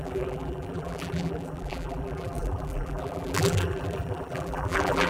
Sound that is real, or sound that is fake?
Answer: fake